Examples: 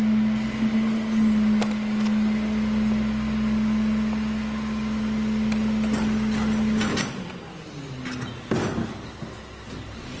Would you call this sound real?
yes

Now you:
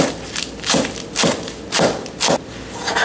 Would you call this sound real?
yes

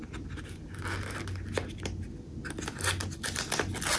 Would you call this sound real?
yes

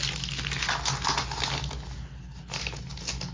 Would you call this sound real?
yes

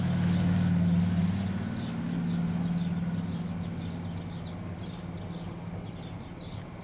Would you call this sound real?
yes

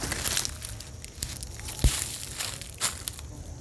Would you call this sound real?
yes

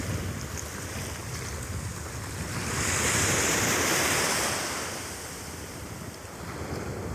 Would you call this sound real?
yes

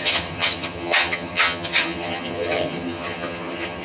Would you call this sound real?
no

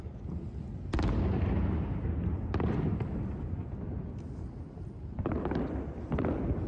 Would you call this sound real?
yes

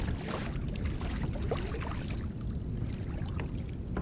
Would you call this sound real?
yes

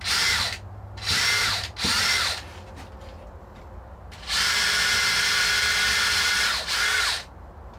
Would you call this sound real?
yes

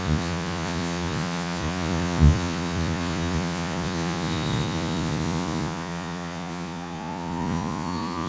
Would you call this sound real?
no